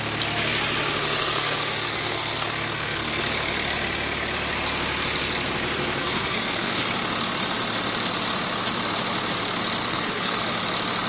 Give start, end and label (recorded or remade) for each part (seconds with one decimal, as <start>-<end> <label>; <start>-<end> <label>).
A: 0.0-1.2 recorded; 1.2-3.2 remade; 3.2-6.0 recorded; 6.0-6.8 remade; 6.8-9.8 recorded; 9.8-10.4 remade; 10.4-11.1 recorded